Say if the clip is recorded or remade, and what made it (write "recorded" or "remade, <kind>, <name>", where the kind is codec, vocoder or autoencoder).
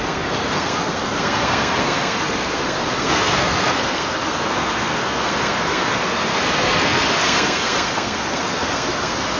remade, codec, SNAC